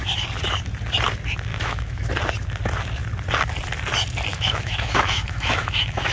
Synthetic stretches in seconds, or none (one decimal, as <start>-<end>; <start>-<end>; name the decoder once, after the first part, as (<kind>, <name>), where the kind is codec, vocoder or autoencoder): 1.5-2.1 (autoencoder, DAC-VAE); 4.3-6.1